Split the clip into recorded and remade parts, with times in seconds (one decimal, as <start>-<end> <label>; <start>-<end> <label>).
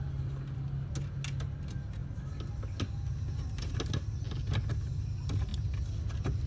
0.0-6.5 recorded